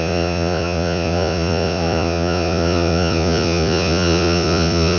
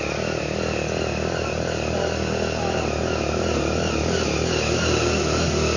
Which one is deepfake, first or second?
first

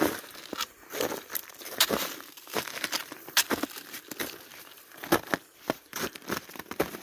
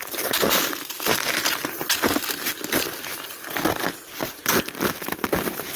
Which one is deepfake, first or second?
first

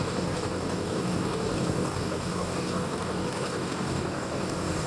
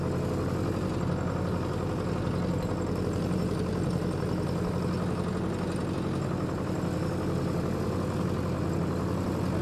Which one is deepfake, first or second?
first